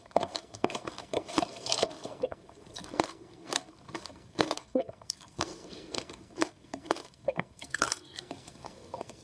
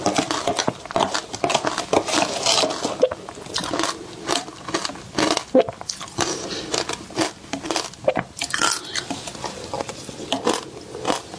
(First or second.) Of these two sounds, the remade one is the first